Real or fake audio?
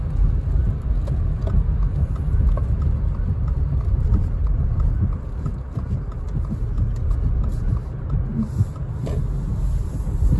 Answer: real